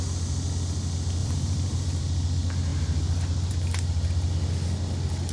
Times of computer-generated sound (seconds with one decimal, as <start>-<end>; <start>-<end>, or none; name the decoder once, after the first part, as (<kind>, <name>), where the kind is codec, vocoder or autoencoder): 1.2-2.0 (vocoder, BigVGAN v2)